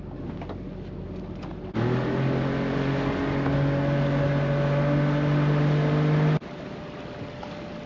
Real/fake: real